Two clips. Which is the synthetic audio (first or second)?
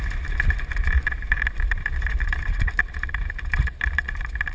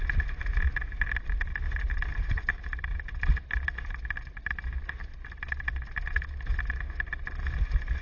first